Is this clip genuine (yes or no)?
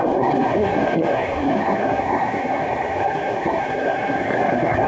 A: no